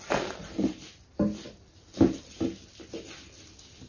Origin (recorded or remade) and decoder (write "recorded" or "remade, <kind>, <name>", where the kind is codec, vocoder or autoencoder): recorded